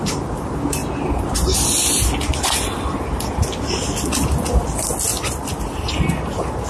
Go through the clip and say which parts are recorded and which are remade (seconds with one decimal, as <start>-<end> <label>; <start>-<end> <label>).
0.0-6.7 recorded